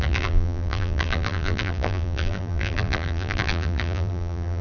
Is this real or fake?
fake